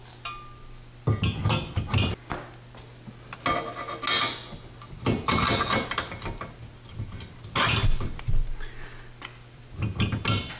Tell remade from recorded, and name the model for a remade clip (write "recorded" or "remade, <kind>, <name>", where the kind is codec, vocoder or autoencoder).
recorded